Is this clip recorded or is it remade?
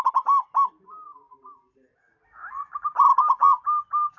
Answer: recorded